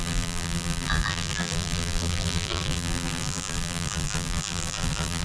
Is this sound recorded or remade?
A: remade